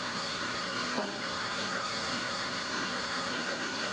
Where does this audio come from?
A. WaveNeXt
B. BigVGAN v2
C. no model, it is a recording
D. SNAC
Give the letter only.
D